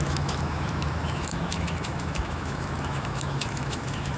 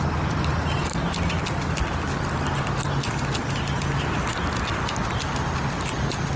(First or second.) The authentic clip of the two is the second